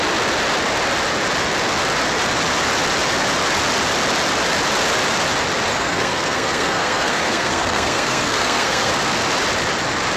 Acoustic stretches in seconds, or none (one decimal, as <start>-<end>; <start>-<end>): 0.0-5.7; 8.9-10.2